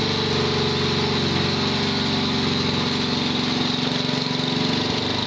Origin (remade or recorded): recorded